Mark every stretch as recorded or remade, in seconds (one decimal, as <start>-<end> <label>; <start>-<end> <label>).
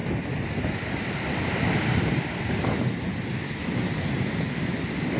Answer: 0.0-5.2 recorded